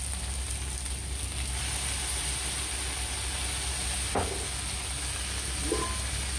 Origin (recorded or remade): recorded